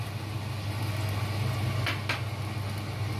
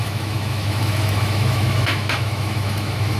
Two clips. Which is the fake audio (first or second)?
second